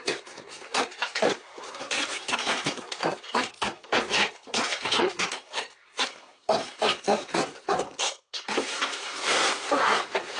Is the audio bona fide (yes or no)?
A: no